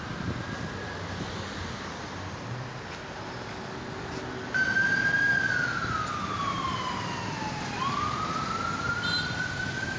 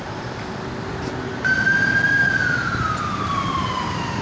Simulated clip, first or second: second